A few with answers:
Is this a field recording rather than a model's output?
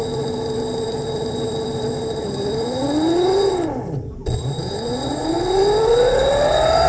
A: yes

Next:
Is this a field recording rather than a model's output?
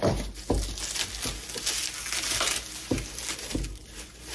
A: yes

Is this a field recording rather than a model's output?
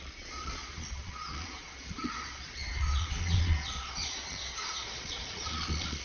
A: no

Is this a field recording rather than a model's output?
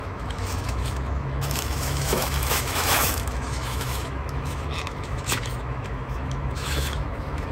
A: no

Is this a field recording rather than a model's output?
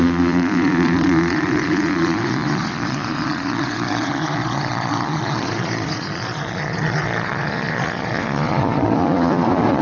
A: no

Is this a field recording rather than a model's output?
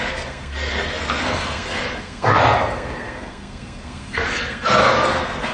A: no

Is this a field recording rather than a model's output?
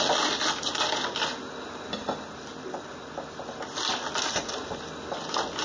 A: yes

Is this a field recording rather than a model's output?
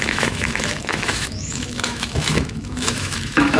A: no